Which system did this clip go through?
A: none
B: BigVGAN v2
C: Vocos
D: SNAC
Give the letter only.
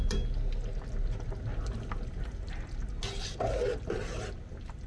A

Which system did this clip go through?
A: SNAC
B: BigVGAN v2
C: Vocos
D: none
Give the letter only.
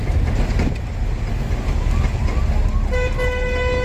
D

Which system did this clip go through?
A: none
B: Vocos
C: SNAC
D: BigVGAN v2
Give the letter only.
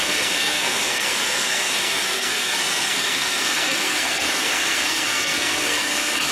C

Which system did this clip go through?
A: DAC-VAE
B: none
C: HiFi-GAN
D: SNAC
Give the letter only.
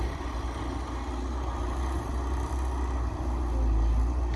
B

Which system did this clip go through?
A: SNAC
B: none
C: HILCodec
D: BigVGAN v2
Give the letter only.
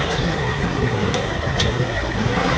A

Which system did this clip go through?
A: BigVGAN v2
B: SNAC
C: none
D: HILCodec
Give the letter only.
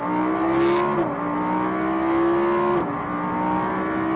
C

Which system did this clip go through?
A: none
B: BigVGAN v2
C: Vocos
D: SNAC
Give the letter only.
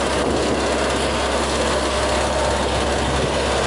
A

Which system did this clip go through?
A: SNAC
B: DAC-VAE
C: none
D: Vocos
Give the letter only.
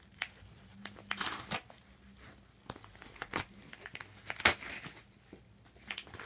C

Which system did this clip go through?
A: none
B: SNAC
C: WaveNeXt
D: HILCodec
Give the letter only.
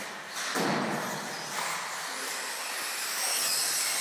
A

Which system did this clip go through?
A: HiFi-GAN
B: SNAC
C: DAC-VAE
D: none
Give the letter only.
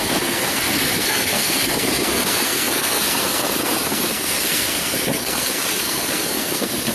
B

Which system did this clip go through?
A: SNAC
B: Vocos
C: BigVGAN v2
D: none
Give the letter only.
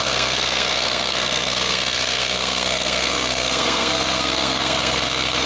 A